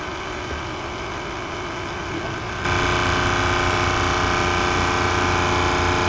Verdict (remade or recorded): recorded